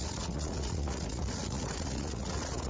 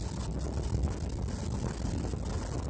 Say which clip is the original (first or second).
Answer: second